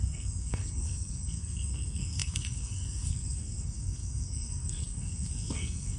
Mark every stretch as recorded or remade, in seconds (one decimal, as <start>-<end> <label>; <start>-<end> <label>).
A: 0.0-6.0 remade